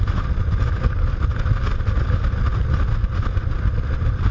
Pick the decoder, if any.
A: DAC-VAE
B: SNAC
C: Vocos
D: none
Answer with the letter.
D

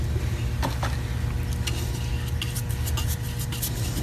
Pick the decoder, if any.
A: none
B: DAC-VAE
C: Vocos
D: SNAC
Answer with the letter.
A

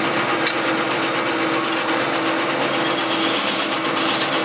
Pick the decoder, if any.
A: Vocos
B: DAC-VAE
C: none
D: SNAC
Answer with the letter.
C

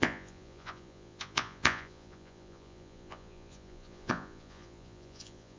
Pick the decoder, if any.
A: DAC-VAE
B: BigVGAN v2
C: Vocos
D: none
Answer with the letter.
C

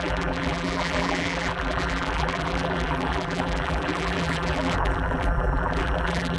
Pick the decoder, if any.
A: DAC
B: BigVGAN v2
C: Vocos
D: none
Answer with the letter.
B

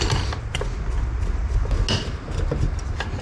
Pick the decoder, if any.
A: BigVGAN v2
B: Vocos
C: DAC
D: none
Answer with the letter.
D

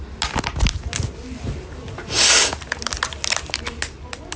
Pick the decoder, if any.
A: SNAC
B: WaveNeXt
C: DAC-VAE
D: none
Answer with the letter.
D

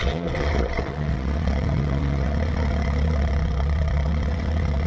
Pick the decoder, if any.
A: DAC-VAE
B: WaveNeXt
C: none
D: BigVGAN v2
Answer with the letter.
B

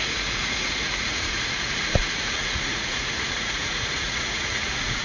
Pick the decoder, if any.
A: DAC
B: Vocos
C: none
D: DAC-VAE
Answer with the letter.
B